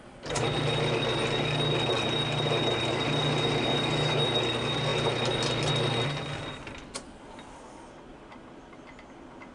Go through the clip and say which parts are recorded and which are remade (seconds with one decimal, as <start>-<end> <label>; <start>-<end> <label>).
0.0-9.5 recorded

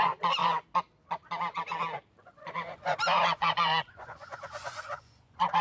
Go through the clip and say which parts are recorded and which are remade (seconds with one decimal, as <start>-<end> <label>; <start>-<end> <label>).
0.0-0.4 remade; 0.4-2.2 recorded; 2.2-5.6 remade